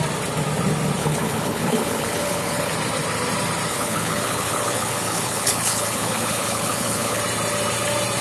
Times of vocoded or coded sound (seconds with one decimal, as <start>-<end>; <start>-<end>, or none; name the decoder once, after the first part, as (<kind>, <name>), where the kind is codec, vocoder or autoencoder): 1.0-2.7 (codec, HILCodec); 3.7-7.2